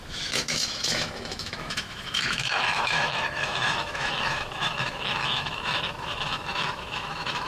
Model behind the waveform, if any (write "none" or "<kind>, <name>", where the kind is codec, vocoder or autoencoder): autoencoder, DAC-VAE